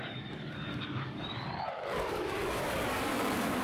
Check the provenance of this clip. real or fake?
fake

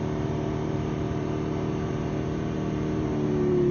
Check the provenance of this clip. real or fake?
fake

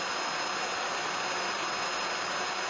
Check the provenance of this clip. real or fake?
real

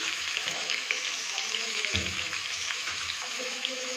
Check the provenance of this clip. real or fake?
fake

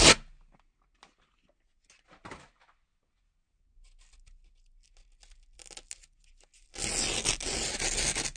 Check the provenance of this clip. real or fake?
real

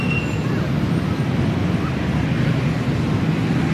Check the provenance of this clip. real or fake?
real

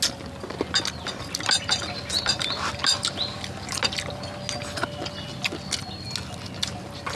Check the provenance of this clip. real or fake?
real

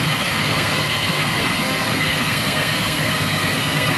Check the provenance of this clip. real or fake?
fake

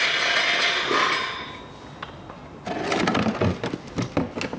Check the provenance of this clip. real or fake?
real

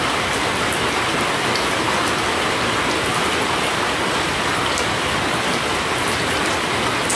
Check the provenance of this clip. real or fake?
real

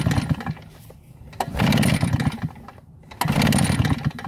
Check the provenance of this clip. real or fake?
real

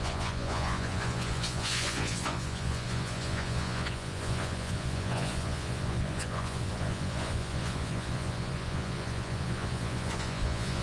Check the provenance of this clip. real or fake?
fake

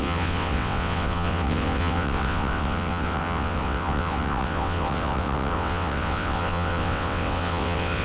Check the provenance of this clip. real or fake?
fake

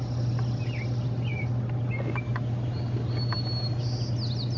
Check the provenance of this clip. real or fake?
real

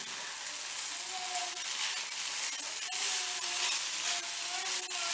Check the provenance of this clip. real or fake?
real